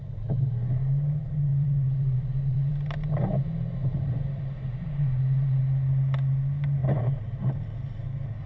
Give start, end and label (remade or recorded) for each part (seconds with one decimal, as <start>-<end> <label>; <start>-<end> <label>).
0.0-1.5 recorded; 1.5-2.7 remade; 2.7-3.8 recorded; 3.8-5.6 remade; 5.6-6.8 recorded; 6.8-7.4 remade; 7.4-8.5 recorded